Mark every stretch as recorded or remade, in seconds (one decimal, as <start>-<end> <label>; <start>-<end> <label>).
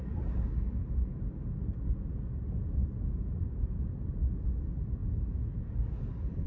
0.0-6.5 recorded